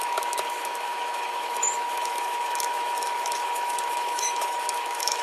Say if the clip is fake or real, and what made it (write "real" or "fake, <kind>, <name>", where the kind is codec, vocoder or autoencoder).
fake, autoencoder, DAC-VAE